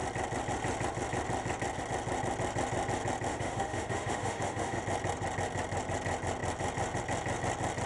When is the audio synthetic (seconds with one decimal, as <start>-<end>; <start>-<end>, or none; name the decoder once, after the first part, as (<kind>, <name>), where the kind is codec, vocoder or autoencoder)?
3.3-4.8 (autoencoder, DAC-VAE)